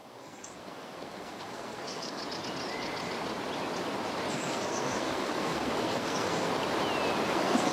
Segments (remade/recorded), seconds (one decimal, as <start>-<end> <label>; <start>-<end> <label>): 0.0-2.2 remade; 2.2-4.3 recorded; 4.3-6.5 remade; 6.5-7.3 recorded; 7.3-7.7 remade